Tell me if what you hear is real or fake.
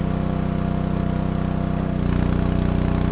real